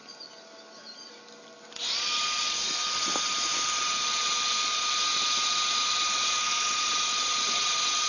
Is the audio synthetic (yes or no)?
no